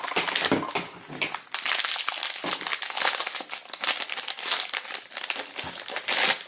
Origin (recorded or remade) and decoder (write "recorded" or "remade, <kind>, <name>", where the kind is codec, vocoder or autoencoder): recorded